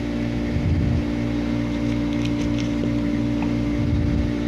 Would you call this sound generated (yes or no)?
no